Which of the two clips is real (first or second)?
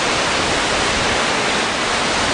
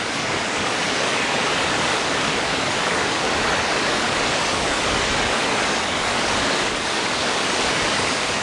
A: first